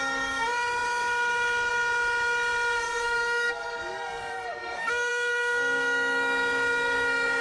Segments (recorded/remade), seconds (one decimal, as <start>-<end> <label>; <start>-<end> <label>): 0.0-7.4 remade